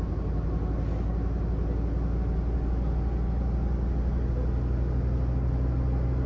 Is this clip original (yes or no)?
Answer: yes